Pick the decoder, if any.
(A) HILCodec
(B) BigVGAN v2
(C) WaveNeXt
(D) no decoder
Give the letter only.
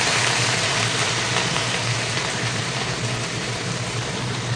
B